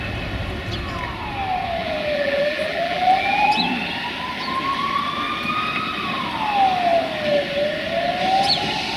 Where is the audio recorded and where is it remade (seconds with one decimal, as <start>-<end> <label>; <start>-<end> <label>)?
0.0-1.8 recorded; 1.8-3.5 remade; 3.5-9.0 recorded